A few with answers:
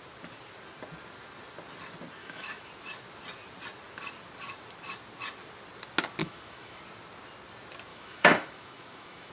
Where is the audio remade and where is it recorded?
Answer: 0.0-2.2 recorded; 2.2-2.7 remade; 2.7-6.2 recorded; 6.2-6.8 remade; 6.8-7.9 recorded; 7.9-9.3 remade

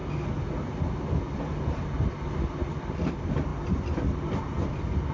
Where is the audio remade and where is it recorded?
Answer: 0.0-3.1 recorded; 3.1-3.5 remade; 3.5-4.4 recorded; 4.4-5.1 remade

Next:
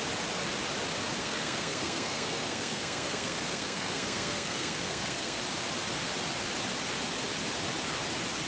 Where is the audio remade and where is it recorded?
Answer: 0.0-1.2 recorded; 1.2-5.4 remade; 5.4-8.5 recorded